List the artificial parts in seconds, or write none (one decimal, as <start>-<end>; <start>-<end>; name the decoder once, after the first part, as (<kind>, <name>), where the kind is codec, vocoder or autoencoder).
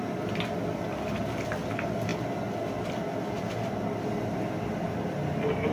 none